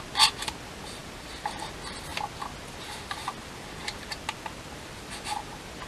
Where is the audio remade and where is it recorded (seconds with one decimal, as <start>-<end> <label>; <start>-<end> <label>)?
0.0-5.9 recorded